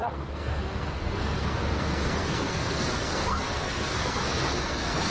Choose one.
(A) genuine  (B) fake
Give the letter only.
B